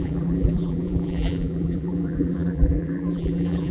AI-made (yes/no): yes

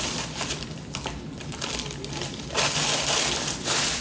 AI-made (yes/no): yes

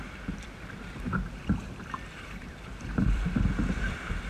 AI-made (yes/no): yes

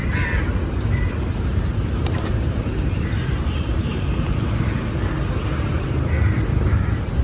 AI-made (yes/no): yes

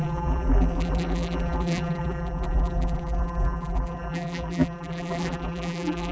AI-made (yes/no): yes